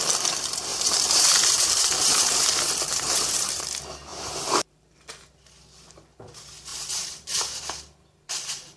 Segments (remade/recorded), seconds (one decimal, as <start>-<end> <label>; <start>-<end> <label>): 0.0-0.7 recorded; 0.7-3.6 remade; 3.6-4.1 recorded; 4.1-4.9 remade; 4.9-6.7 recorded; 6.7-7.6 remade; 7.6-8.8 recorded